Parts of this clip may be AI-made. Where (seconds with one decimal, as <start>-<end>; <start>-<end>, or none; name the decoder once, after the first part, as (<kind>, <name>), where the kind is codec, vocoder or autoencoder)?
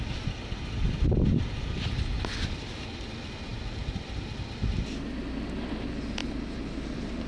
3.5-4.6 (vocoder, BigVGAN v2); 6.2-7.3